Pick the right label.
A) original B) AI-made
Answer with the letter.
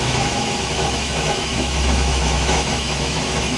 B